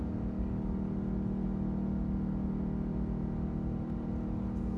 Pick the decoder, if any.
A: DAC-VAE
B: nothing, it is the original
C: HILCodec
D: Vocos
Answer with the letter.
B